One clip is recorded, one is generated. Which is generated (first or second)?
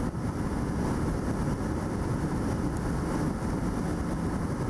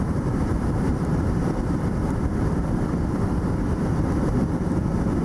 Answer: second